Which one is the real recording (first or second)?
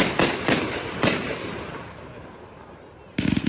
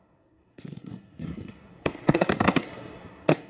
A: first